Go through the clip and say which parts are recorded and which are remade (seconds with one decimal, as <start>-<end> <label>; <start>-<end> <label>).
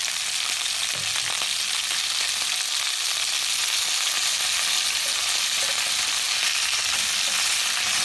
0.0-8.0 recorded